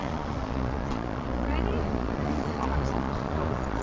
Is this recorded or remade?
remade